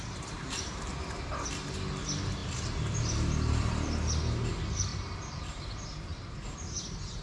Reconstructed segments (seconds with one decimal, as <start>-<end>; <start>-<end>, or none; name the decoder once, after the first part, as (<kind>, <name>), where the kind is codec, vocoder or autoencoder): 0.0-1.3 (vocoder, BigVGAN v2); 2.4-3.7; 4.9-5.6; 6.1-7.2